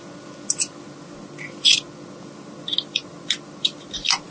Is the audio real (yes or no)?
yes